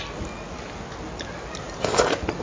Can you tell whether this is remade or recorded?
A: recorded